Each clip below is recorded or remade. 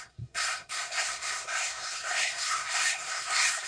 remade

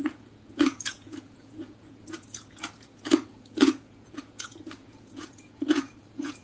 remade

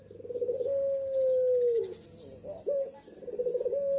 recorded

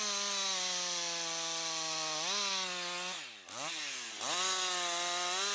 recorded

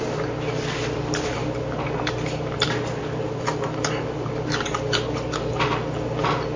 recorded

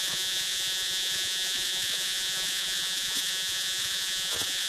remade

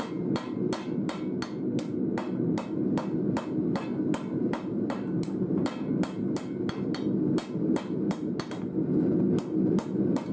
recorded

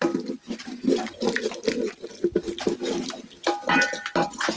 recorded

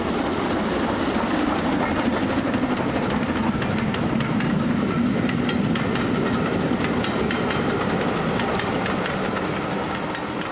recorded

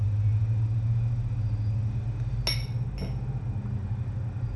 recorded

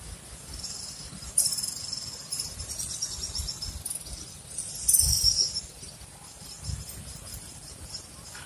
recorded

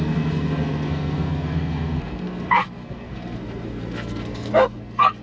remade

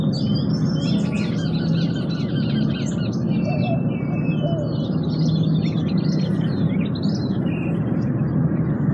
recorded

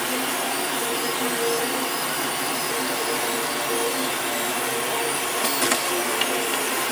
recorded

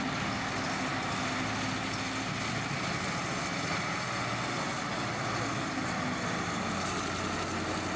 recorded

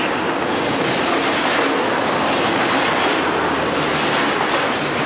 recorded